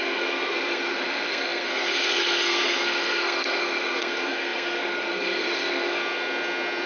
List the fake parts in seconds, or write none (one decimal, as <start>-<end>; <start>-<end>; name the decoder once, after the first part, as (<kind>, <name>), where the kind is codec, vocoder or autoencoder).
0.0-6.0 (codec, SNAC)